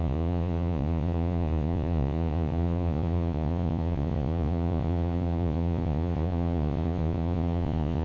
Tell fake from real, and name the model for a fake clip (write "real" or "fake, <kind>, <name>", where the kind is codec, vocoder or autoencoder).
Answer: fake, vocoder, Vocos